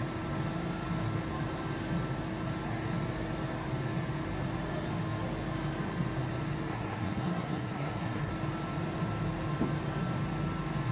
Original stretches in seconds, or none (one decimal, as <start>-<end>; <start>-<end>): 0.0-6.7; 8.3-10.9